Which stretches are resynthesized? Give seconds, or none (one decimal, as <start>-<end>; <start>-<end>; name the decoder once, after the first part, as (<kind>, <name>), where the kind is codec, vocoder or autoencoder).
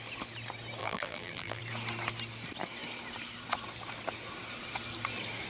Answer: 0.8-1.6 (vocoder, BigVGAN v2)